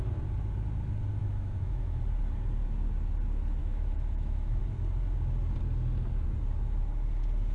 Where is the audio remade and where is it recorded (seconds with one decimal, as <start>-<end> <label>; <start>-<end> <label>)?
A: 0.0-1.2 recorded; 1.2-2.0 remade; 2.0-3.6 recorded; 3.6-4.6 remade; 4.6-7.5 recorded